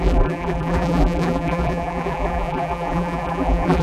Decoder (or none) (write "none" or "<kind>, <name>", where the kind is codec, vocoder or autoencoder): vocoder, BigVGAN v2